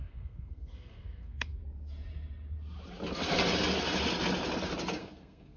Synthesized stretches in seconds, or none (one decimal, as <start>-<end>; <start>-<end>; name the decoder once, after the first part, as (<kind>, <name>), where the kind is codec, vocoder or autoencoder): 0.0-1.6 (codec, SNAC); 5.0-5.6